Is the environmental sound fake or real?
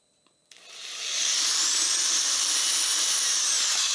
fake